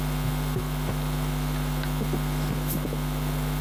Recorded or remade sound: recorded